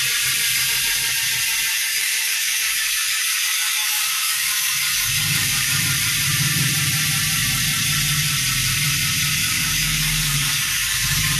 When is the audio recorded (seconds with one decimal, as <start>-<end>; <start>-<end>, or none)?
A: 0.0-1.7; 5.8-9.4